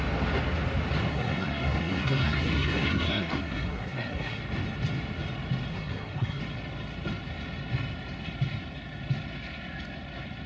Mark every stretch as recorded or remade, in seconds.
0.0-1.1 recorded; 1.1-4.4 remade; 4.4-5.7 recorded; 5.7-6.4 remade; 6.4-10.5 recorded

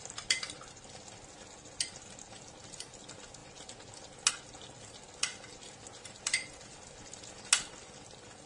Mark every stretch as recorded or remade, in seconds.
0.0-8.5 recorded

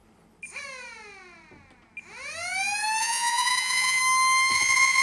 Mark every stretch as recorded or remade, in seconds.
0.0-3.0 recorded; 3.0-4.0 remade; 4.0-4.5 recorded; 4.5-5.0 remade

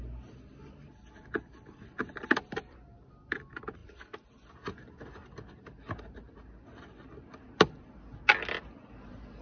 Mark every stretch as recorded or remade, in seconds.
0.0-9.4 recorded

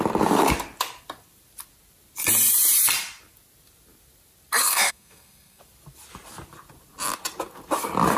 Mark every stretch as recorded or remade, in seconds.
0.0-4.6 recorded; 4.6-5.6 remade; 5.6-8.2 recorded

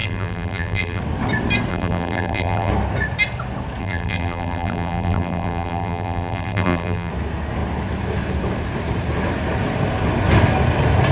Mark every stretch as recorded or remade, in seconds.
0.0-1.0 remade; 1.0-1.7 recorded; 1.7-2.7 remade; 2.7-3.8 recorded; 3.8-7.1 remade; 7.1-11.1 recorded

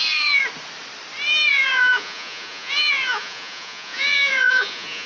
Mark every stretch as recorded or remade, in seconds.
0.0-0.4 remade; 0.4-1.5 recorded; 1.5-5.1 remade